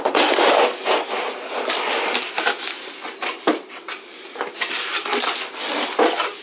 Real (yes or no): yes